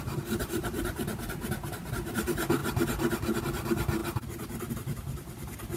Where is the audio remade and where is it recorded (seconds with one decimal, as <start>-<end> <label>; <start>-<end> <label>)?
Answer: 0.0-2.6 remade; 2.6-3.4 recorded; 3.4-5.8 remade

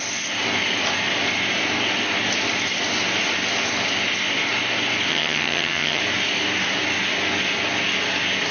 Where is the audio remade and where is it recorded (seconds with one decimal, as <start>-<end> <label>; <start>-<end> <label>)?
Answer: 0.0-5.1 recorded; 5.1-6.0 remade; 6.0-8.5 recorded

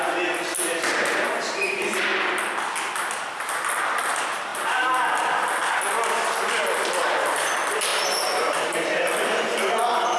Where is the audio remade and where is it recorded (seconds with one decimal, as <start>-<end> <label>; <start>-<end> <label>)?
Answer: 0.0-2.1 remade; 2.1-4.0 recorded; 4.0-10.2 remade

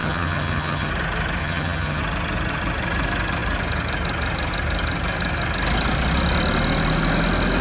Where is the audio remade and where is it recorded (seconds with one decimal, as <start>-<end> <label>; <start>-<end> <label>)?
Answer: 0.0-0.9 remade; 0.9-1.4 recorded; 1.4-2.0 remade; 2.0-7.6 recorded

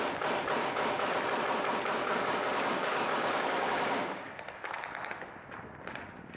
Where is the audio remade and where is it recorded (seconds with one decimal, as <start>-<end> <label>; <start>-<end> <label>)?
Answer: 0.0-0.6 recorded; 0.6-1.2 remade; 1.2-2.0 recorded; 2.0-4.7 remade; 4.7-6.4 recorded

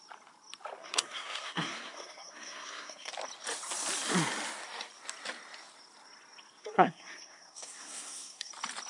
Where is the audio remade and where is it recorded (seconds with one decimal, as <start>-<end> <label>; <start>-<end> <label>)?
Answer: 0.0-0.8 recorded; 0.8-3.1 remade; 3.1-6.6 recorded; 6.6-8.5 remade; 8.5-8.9 recorded

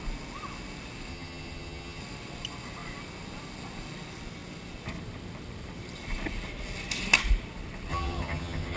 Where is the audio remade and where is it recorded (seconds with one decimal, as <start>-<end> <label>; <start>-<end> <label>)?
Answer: 0.0-1.1 recorded; 1.1-2.0 remade; 2.0-7.9 recorded; 7.9-8.8 remade

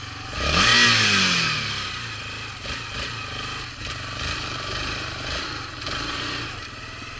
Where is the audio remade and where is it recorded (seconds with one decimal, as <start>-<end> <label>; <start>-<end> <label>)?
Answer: 0.0-0.7 remade; 0.7-3.8 recorded; 3.8-7.2 remade